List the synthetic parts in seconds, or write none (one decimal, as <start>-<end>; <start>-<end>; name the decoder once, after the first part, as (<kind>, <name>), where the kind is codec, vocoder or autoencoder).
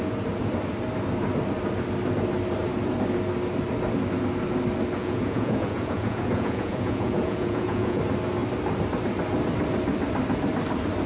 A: 5.0-8.0 (vocoder, Vocos)